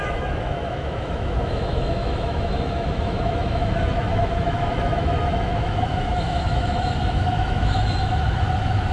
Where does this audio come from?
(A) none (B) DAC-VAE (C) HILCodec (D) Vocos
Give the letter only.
B